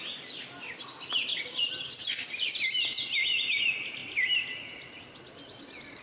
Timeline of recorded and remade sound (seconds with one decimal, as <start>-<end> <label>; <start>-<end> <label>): 0.0-4.0 recorded; 4.0-5.0 remade; 5.0-6.0 recorded